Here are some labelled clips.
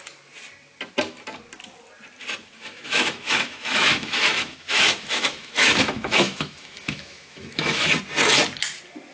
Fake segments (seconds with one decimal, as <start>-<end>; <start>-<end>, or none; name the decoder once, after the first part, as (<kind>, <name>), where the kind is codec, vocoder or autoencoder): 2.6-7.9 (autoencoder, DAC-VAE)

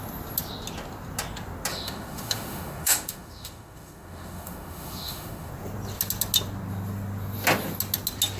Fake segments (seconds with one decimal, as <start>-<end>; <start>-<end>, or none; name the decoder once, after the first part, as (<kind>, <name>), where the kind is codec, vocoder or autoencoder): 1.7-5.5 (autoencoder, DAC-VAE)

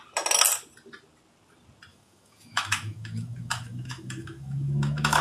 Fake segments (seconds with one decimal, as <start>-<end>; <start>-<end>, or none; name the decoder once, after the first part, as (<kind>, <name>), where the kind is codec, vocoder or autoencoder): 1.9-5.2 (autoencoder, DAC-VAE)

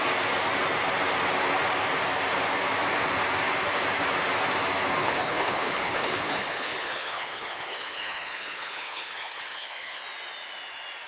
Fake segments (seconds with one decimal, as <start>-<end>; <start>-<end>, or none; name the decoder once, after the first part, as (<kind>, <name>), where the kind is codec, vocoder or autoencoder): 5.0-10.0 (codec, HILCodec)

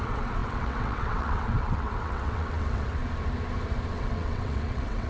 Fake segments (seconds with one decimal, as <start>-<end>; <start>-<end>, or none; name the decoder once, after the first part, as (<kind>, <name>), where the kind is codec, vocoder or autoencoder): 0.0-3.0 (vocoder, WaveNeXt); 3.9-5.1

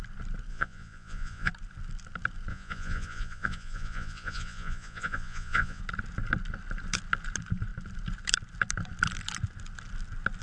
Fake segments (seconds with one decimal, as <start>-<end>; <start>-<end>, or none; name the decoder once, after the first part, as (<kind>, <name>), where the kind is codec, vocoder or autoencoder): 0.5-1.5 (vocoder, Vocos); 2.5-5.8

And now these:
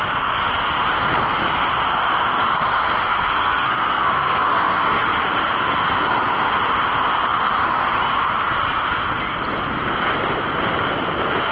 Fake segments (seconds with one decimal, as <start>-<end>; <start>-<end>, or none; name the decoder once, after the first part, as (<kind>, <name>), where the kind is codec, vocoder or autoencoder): 3.1-5.1 (codec, SNAC)